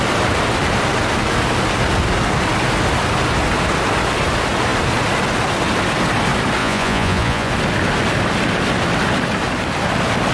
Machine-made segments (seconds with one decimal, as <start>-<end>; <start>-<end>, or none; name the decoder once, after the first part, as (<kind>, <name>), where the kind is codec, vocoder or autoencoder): 6.6-7.5 (vocoder, Vocos)